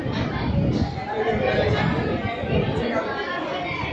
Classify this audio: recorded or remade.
recorded